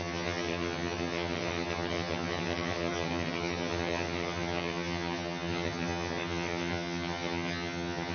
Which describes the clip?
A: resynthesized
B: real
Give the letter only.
A